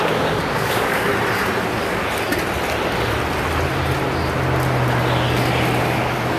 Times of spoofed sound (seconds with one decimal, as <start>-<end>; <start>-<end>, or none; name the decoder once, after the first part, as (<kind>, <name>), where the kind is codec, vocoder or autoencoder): 0.0-1.1 (codec, DAC); 1.6-2.0; 5.8-6.4